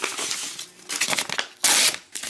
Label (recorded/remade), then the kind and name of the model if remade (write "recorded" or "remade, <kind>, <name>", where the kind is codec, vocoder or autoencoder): recorded